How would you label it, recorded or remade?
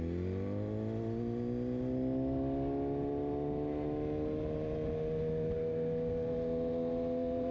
recorded